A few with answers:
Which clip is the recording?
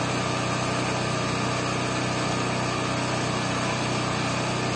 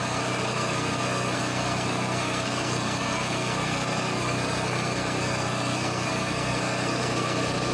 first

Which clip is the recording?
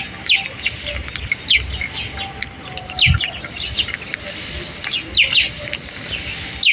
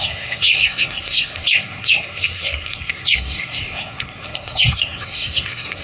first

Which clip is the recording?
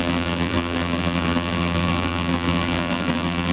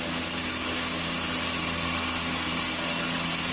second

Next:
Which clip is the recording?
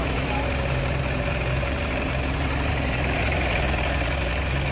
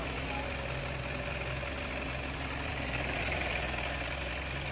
second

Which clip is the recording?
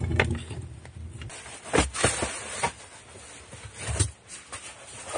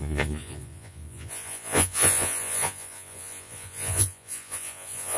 first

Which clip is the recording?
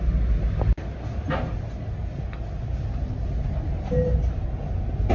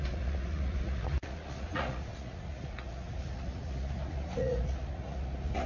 first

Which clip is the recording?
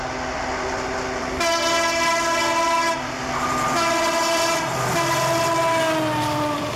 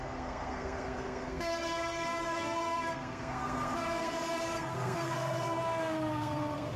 first